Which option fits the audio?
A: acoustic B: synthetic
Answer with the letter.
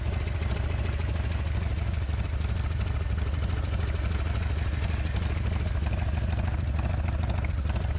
A